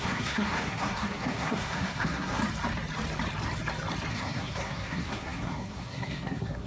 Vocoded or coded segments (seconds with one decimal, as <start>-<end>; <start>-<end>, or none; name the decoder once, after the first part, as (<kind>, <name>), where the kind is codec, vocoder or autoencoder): 0.0-2.4 (codec, SNAC); 4.1-6.7